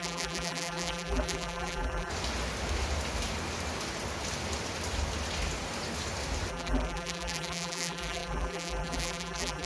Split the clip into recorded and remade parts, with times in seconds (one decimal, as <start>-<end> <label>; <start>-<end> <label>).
0.0-2.1 remade; 2.1-6.5 recorded; 6.5-9.7 remade